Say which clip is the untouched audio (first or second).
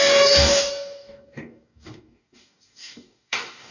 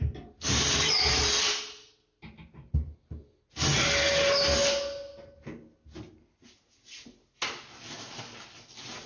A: second